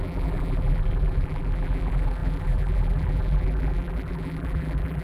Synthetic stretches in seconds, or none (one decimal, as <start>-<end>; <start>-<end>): 0.0-5.0